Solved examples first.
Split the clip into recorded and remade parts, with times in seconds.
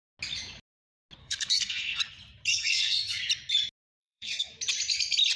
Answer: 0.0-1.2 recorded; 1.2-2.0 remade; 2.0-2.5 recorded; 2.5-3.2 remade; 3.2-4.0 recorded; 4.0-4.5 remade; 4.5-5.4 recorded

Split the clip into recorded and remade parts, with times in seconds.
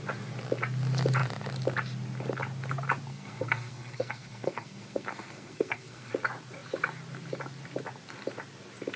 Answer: 0.0-3.1 recorded; 3.1-6.1 remade; 6.1-9.0 recorded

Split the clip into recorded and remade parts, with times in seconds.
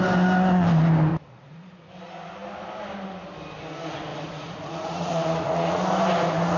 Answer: 0.0-1.1 recorded; 1.1-1.9 remade; 1.9-4.1 recorded; 4.1-5.8 remade; 5.8-6.6 recorded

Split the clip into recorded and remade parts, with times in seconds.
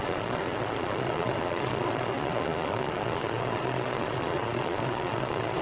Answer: 0.0-5.6 remade